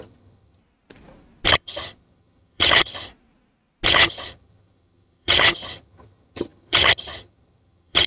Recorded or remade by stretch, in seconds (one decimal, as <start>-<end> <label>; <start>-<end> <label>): 0.0-0.6 remade; 0.6-1.5 recorded; 1.5-3.1 remade; 3.1-3.9 recorded; 3.9-8.1 remade